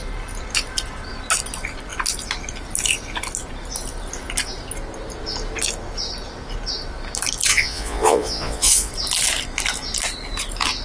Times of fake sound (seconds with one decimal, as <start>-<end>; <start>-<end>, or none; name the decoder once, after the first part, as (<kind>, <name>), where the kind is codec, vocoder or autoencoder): 7.5-8.9 (vocoder, Vocos)